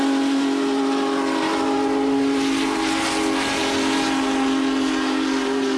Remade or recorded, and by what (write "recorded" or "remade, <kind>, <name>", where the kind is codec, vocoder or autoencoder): recorded